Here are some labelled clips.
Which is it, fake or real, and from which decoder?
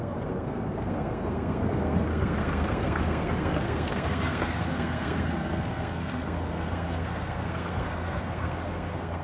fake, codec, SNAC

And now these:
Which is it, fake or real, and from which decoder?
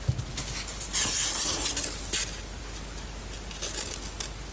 real